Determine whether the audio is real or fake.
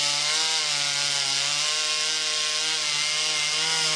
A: real